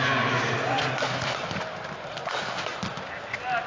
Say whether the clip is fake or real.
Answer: real